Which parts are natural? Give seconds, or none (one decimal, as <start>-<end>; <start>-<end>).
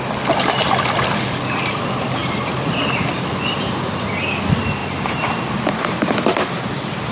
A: 0.0-7.1